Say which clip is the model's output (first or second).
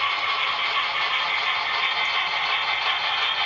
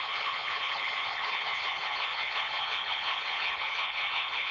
second